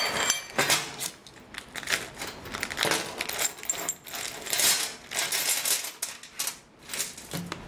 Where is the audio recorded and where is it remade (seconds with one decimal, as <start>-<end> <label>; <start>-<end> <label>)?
0.0-7.7 recorded